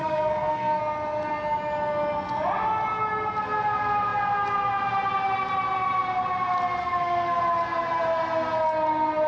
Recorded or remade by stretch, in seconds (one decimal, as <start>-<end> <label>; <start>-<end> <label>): 0.0-0.8 remade; 0.8-6.8 recorded; 6.8-7.4 remade; 7.4-9.3 recorded